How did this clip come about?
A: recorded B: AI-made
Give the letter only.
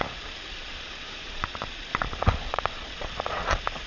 B